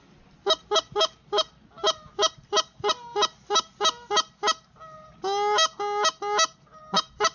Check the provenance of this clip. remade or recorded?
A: recorded